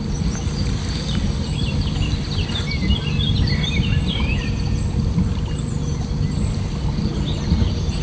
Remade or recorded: recorded